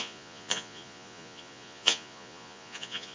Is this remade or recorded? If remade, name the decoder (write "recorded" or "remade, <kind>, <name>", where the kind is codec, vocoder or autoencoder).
remade, vocoder, Vocos